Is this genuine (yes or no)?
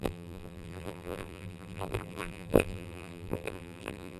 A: no